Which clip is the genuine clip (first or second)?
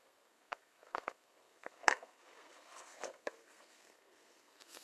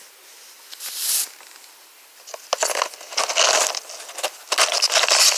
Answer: second